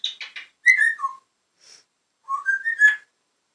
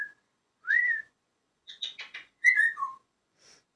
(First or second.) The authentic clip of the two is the first